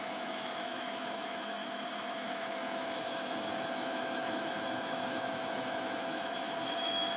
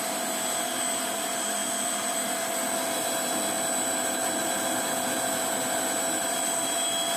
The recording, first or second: second